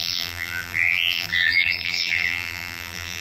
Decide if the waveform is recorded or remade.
remade